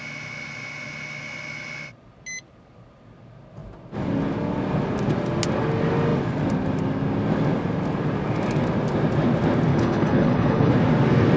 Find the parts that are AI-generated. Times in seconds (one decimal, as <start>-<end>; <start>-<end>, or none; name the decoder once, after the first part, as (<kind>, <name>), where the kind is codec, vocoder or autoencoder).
9.7-10.7 (codec, HILCodec)